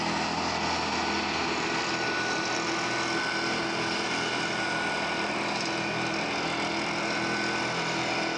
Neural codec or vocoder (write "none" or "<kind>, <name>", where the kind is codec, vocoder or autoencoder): none